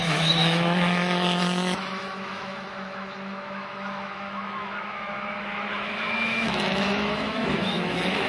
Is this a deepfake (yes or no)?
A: yes